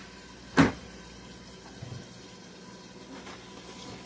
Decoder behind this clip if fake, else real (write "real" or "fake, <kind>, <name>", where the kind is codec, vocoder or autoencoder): real